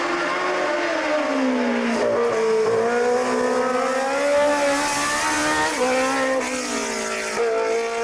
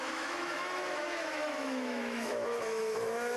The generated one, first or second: second